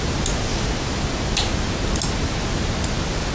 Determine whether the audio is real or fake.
real